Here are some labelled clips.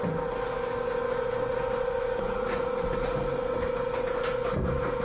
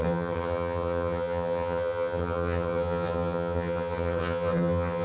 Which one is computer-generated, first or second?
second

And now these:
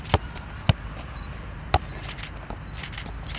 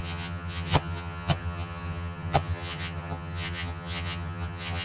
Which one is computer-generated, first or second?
second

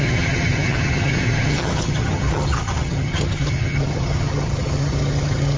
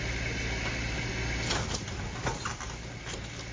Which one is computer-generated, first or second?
first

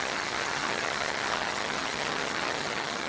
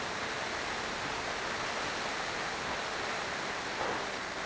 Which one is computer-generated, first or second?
first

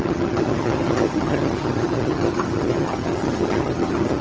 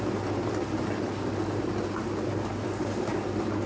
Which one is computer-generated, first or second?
first